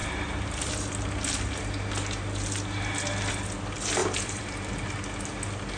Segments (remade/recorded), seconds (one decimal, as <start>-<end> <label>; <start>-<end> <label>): 0.0-4.0 recorded; 4.0-4.7 remade; 4.7-5.8 recorded

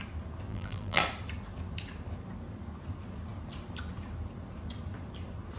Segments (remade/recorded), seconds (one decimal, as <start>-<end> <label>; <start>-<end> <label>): 0.0-0.5 recorded; 0.5-1.0 remade; 1.0-5.6 recorded

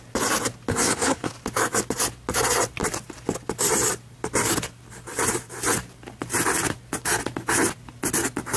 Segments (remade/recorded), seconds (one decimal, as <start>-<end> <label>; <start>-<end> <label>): 0.0-0.7 recorded; 0.7-1.3 remade; 1.3-8.6 recorded

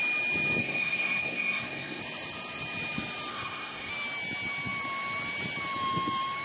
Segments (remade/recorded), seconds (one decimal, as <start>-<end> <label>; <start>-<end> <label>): 0.0-0.6 recorded; 0.6-2.0 remade; 2.0-3.3 recorded; 3.3-3.9 remade; 3.9-6.4 recorded

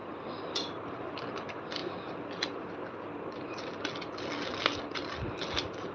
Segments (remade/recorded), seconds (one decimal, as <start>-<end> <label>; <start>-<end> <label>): 0.0-5.9 recorded

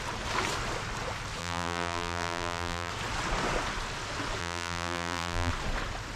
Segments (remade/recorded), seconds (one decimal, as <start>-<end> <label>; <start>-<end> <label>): 0.0-1.4 recorded; 1.4-2.9 remade; 2.9-4.4 recorded; 4.4-5.5 remade; 5.5-6.2 recorded

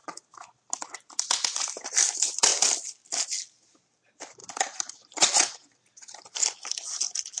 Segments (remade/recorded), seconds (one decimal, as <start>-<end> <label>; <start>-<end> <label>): 0.0-1.5 recorded; 1.5-2.5 remade; 2.5-3.5 recorded; 3.5-4.4 remade; 4.4-7.4 recorded